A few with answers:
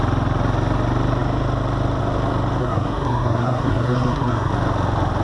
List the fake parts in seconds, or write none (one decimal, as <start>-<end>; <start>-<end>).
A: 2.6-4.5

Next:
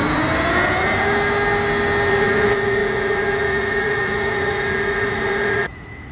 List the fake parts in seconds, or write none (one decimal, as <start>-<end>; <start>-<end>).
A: 2.1-6.1

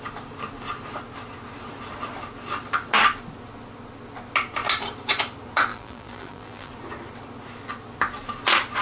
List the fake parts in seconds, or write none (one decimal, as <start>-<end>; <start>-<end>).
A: 5.7-6.7

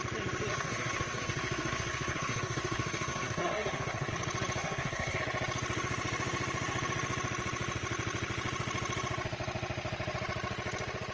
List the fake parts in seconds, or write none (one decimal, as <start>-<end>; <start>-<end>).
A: 0.5-4.1; 4.6-5.2

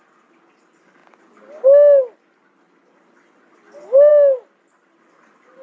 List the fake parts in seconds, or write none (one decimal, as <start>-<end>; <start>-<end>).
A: none

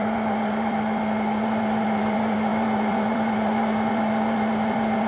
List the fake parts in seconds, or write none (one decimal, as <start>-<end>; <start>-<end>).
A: 0.0-5.1

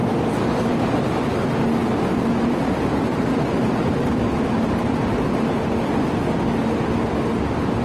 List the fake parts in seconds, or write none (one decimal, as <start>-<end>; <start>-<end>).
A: 0.0-1.3; 1.8-2.6; 3.1-4.9